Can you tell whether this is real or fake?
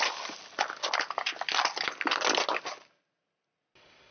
real